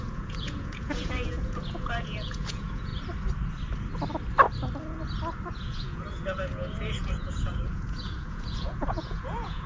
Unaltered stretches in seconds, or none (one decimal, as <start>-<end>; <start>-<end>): 2.9-5.5